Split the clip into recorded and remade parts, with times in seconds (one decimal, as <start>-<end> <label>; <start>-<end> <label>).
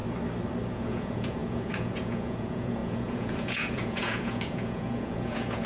0.0-0.7 recorded; 0.7-5.7 remade